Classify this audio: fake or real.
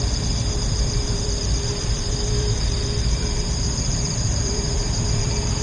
fake